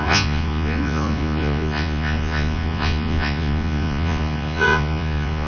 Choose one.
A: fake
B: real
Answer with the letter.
A